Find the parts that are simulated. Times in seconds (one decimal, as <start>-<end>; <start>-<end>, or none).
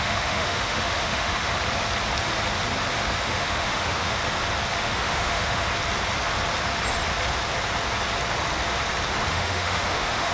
0.0-1.5; 3.2-4.2; 4.8-5.7; 9.3-10.3